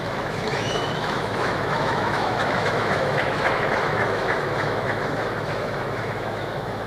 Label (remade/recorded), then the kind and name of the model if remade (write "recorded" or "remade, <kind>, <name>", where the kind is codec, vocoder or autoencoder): remade, autoencoder, DAC-VAE